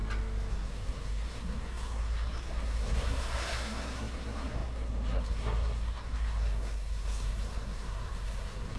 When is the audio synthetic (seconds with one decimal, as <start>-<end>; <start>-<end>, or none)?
0.5-8.8